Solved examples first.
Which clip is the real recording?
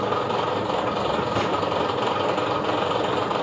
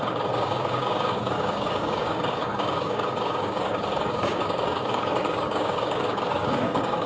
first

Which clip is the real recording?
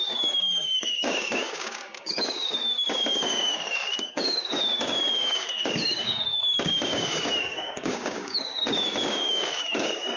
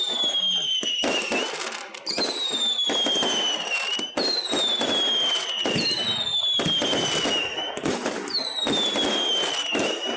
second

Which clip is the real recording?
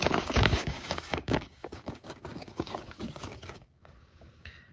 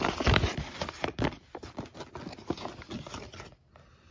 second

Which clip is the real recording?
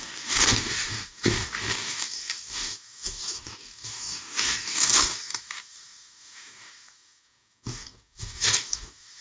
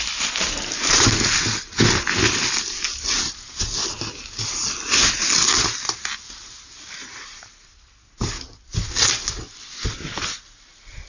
second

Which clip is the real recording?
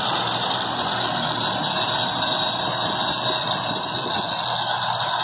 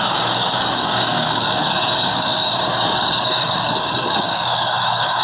first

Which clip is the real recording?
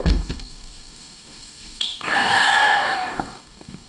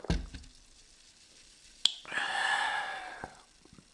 second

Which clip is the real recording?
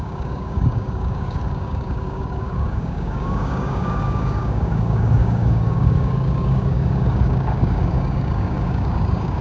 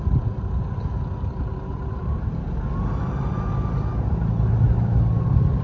second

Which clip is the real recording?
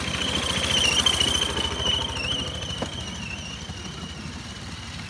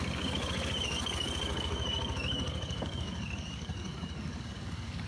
first